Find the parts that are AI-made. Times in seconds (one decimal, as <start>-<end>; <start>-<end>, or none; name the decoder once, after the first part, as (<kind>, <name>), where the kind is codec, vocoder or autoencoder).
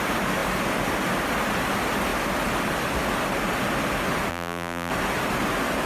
4.3-4.9 (vocoder, BigVGAN v2)